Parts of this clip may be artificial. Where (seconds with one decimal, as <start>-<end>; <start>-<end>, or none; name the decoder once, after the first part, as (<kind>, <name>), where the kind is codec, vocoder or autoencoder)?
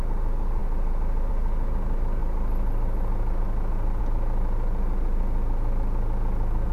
none